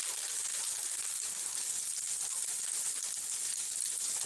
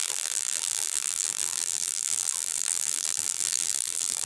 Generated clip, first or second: second